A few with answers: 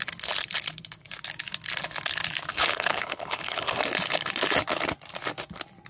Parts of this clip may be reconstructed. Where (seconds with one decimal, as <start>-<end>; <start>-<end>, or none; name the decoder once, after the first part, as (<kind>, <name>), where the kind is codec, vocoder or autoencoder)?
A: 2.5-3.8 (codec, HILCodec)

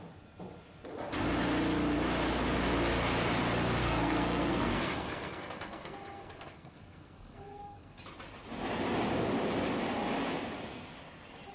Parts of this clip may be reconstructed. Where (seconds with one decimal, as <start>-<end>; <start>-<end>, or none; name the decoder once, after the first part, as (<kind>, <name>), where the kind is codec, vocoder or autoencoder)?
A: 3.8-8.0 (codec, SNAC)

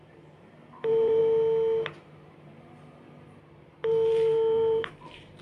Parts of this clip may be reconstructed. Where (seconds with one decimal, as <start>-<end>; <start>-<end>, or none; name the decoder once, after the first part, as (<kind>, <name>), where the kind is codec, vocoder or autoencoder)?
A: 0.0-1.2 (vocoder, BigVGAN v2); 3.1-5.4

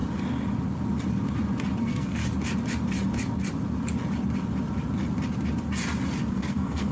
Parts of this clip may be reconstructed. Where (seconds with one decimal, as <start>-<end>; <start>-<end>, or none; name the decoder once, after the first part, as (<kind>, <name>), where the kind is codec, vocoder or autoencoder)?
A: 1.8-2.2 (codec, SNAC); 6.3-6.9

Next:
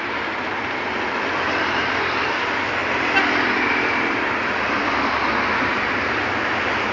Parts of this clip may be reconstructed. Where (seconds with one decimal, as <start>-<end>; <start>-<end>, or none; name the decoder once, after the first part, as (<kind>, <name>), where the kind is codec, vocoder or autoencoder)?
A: none

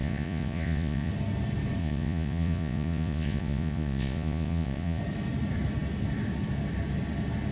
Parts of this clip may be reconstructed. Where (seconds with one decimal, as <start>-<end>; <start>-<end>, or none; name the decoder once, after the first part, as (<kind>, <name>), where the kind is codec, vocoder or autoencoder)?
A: 0.0-1.1 (vocoder, Vocos); 1.8-5.0